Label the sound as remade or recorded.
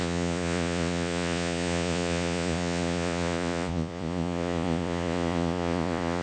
remade